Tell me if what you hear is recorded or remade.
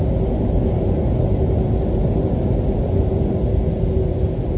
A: recorded